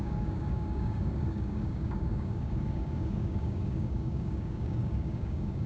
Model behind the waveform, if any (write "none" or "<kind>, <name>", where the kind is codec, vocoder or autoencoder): codec, DAC